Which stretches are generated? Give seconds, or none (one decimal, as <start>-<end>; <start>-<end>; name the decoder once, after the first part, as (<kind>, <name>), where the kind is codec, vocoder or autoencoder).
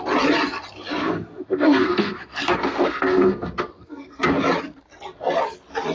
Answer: 1.0-4.2 (codec, SNAC)